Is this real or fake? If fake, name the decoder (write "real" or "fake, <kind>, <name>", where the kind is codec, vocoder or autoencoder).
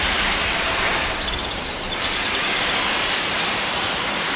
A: fake, vocoder, BigVGAN v2